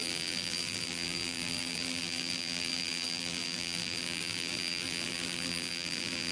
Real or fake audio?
fake